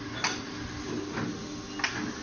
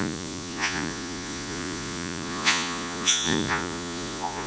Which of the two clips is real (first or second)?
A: first